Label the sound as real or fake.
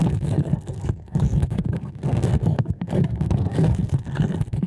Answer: fake